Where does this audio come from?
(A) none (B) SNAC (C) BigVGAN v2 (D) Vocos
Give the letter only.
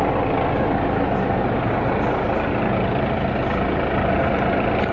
A